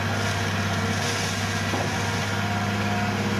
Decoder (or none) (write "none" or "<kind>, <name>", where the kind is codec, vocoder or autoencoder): none